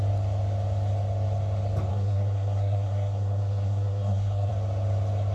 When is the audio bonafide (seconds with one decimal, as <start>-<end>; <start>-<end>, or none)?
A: 0.0-1.9; 4.5-5.3